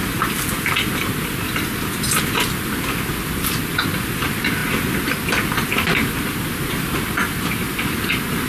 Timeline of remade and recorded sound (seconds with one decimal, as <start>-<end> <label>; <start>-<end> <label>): 0.0-8.5 recorded